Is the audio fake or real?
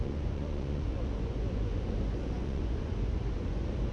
fake